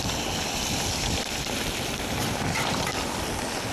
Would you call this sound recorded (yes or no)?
no